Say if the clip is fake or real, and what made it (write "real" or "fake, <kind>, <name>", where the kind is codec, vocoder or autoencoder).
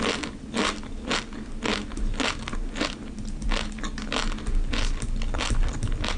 real